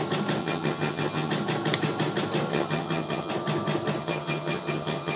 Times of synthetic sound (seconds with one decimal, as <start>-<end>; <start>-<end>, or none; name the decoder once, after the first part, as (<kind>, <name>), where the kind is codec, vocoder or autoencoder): 0.4-1.3 (vocoder, HiFi-GAN); 2.5-3.3; 4.0-5.2